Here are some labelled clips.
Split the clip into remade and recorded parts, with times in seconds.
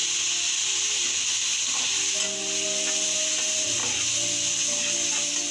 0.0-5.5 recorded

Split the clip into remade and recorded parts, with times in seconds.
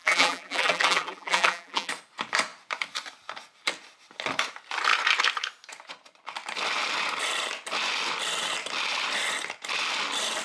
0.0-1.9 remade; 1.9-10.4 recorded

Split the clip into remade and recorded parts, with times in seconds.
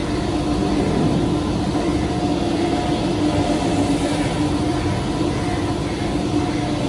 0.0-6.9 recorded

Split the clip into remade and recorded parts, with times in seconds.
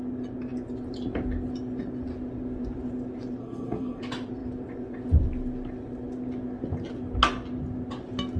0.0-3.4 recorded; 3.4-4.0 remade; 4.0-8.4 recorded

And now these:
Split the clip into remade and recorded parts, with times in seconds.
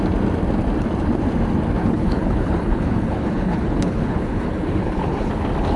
0.0-1.8 recorded; 1.8-5.3 remade; 5.3-5.8 recorded